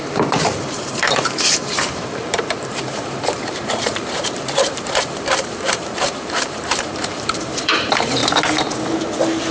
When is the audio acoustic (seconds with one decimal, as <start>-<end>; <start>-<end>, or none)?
8.2-9.5

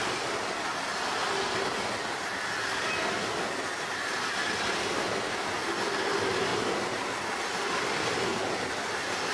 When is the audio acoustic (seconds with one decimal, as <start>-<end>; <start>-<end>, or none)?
0.0-9.3